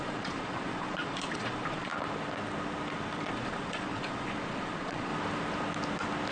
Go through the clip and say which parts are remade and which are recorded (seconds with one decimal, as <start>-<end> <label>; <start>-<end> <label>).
0.0-1.9 remade; 1.9-3.3 recorded; 3.3-5.1 remade; 5.1-6.3 recorded